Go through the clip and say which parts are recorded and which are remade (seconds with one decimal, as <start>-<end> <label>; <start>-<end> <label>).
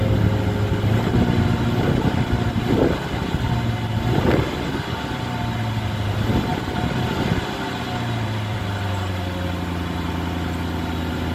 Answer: 0.0-6.5 recorded; 6.5-8.6 remade; 8.6-11.3 recorded